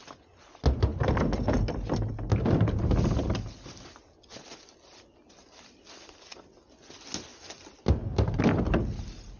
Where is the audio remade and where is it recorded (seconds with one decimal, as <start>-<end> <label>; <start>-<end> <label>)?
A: 0.0-7.3 recorded; 7.3-8.4 remade; 8.4-9.4 recorded